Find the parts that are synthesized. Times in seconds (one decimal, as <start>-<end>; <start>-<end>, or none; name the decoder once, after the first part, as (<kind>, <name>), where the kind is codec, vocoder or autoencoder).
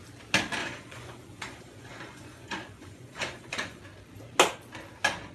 0.6-3.8 (vocoder, Vocos)